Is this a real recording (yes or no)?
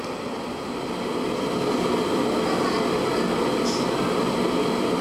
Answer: yes